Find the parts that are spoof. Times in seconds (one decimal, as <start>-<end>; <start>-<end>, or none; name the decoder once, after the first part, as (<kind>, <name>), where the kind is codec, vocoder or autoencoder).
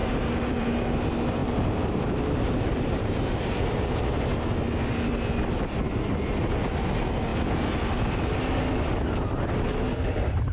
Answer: 0.0-1.0 (vocoder, BigVGAN v2); 1.4-4.0